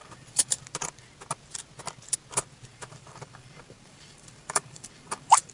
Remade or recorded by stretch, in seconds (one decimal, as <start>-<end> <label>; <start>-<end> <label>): 0.0-0.6 remade; 0.6-2.7 recorded; 2.7-5.5 remade